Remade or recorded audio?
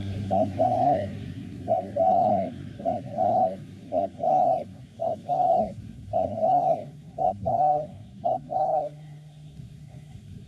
remade